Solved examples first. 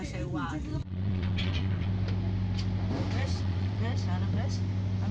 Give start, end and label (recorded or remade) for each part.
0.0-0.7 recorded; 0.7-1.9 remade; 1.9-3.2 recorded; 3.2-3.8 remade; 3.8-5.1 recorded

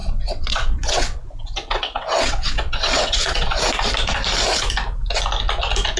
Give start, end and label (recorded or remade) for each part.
0.0-3.6 remade; 3.6-6.0 recorded

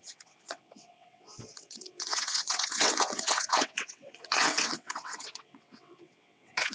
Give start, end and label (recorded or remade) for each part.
0.0-6.7 remade